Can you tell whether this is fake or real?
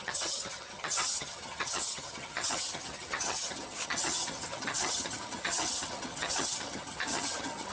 fake